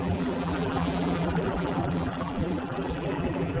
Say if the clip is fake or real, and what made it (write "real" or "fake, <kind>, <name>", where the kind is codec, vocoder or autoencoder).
fake, vocoder, BigVGAN v2